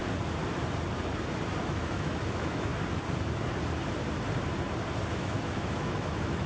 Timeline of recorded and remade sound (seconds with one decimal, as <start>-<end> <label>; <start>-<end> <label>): 0.0-1.6 recorded; 1.6-2.7 remade; 2.7-5.2 recorded; 5.2-6.5 remade